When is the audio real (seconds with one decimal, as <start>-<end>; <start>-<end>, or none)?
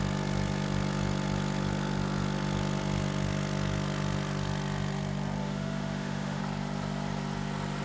0.0-5.4; 6.4-7.8